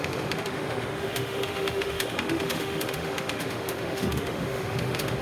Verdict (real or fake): fake